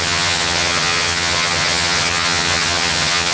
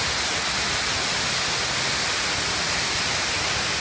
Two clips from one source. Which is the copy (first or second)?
first